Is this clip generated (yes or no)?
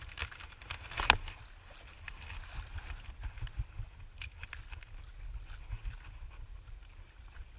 no